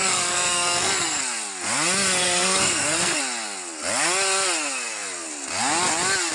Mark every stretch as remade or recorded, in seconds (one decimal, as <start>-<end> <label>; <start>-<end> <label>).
0.0-1.2 remade; 1.2-2.2 recorded; 2.2-3.2 remade; 3.2-6.3 recorded